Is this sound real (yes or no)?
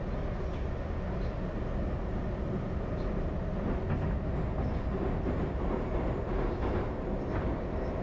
yes